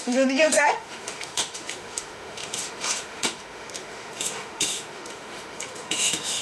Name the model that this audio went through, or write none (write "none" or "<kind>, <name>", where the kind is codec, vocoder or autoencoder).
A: autoencoder, DAC-VAE